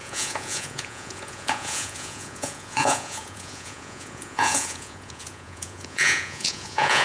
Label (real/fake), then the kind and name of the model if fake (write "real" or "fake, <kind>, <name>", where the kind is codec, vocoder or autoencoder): fake, vocoder, Vocos